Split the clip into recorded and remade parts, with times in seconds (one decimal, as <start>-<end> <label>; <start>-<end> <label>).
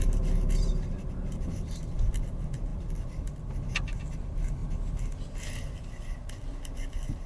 0.0-2.7 recorded; 2.7-3.5 remade; 3.5-7.3 recorded